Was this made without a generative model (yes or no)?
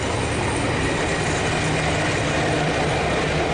yes